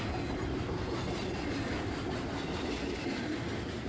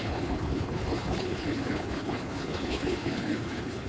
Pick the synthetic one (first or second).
second